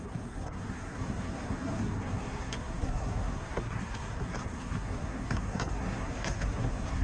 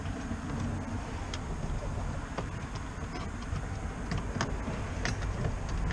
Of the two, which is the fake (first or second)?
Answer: first